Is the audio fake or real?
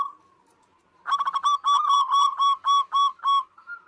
real